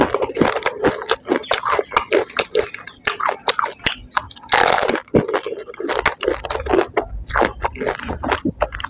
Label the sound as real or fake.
real